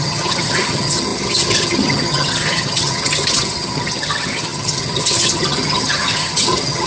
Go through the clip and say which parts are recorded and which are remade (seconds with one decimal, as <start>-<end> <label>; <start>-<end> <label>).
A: 0.0-6.9 remade